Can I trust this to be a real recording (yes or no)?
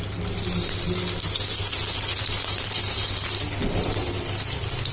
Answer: yes